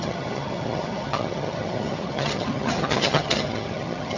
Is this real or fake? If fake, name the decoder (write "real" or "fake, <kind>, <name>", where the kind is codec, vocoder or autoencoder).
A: fake, vocoder, HiFi-GAN